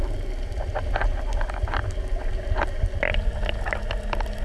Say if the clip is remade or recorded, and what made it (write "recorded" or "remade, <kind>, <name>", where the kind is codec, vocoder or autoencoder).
recorded